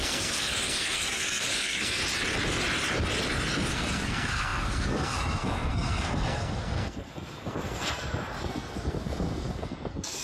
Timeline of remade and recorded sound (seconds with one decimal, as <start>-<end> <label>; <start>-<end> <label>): 0.0-2.0 remade; 2.0-3.7 recorded; 3.7-10.2 remade